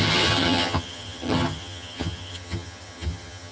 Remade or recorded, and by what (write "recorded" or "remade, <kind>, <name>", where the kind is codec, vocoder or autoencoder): remade, vocoder, HiFi-GAN